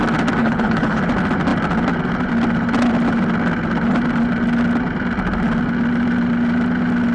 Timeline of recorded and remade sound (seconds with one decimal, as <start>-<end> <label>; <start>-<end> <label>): 0.0-0.4 recorded; 0.4-1.0 remade; 1.0-7.1 recorded